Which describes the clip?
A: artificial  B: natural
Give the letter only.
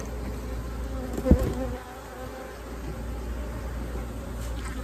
B